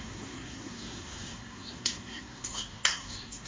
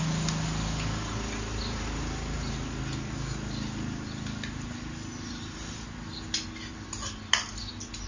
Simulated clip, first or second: first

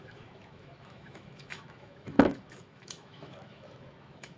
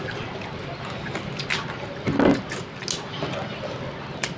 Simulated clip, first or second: first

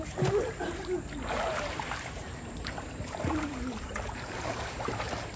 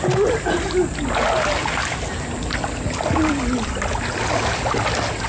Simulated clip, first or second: first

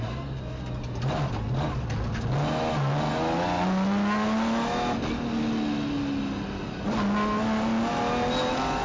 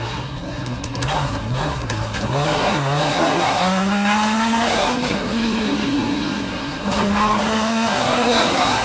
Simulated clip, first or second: second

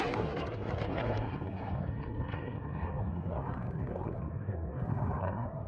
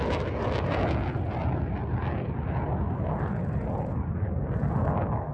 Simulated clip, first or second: first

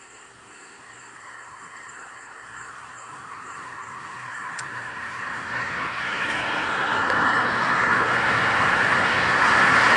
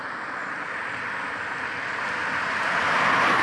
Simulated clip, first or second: first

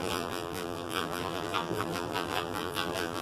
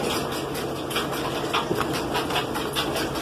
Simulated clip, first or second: first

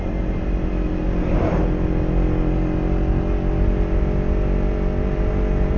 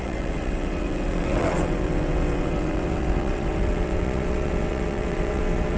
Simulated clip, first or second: second